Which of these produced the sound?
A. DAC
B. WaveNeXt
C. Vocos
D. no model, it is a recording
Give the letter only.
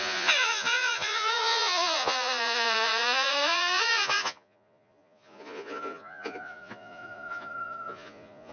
C